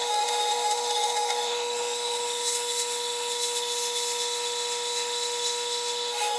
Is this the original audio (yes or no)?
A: no